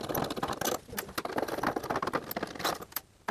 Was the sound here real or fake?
real